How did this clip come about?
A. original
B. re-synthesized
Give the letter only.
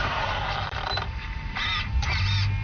A